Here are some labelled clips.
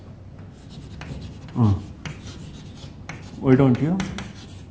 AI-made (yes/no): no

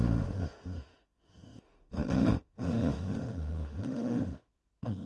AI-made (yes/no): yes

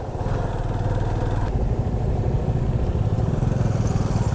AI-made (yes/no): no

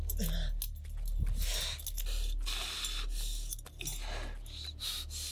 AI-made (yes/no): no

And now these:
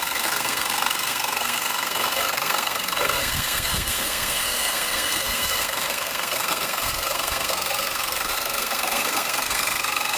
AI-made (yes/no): yes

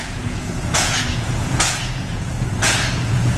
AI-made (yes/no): yes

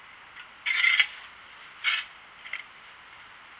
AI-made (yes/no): no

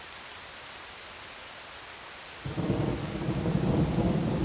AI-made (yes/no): no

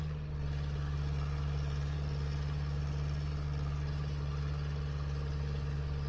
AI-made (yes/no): no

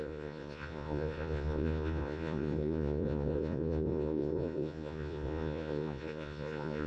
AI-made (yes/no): yes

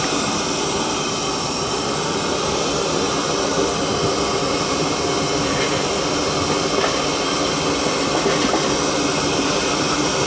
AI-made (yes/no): no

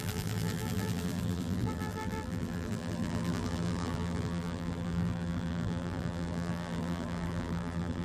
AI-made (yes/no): yes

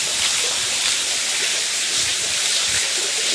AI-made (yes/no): no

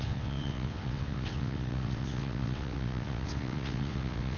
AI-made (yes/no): yes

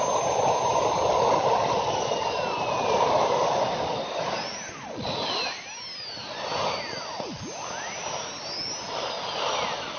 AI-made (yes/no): no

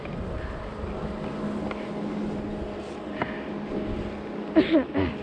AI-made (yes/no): no